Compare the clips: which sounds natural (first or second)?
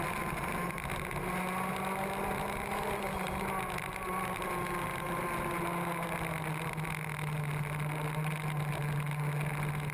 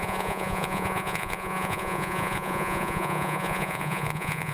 first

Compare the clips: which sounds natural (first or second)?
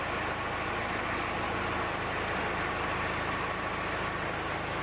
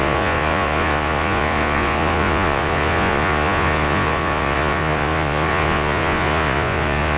first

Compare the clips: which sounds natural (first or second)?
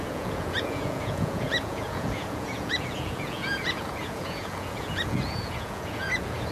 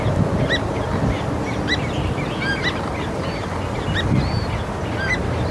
second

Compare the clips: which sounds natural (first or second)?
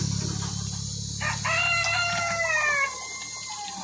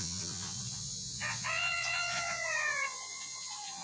first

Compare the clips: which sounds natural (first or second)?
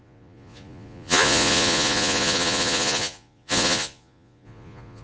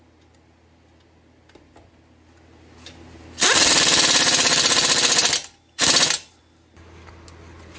second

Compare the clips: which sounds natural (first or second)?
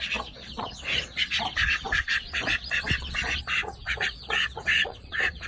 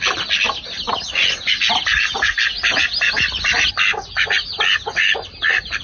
second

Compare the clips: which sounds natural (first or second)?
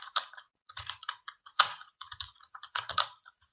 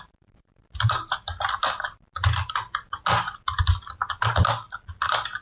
second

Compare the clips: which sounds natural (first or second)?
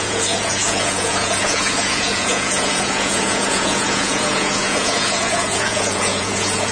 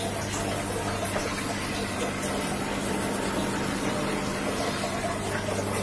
second